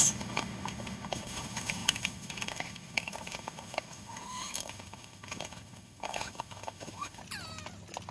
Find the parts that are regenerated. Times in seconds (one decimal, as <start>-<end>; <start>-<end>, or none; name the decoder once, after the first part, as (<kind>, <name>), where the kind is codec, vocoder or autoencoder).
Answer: 0.0-7.2 (autoencoder, DAC-VAE)